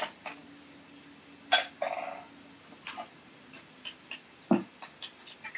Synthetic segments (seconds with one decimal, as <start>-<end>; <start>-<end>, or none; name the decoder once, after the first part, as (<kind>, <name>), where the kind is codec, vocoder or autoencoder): none